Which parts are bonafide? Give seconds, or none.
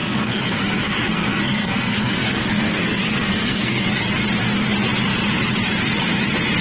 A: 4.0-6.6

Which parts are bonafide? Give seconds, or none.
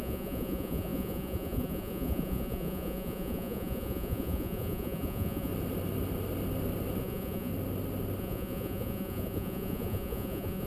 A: 5.5-7.0; 7.5-8.2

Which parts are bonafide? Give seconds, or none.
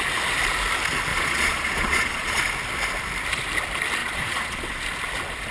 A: 0.0-1.1; 2.4-4.0; 4.8-5.5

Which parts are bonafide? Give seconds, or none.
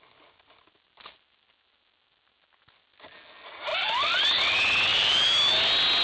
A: 0.0-3.7; 4.4-4.9; 5.5-6.0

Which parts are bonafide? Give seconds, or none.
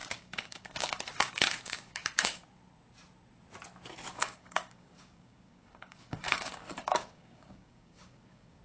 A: 2.4-4.1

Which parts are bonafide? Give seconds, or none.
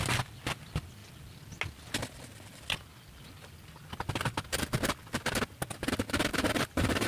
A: 0.0-6.3